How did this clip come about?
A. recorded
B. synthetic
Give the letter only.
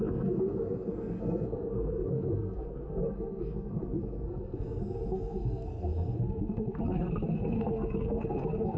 B